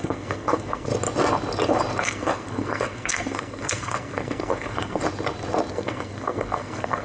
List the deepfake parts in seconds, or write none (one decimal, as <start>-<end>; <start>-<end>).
0.0-0.9; 2.0-5.0; 5.7-7.0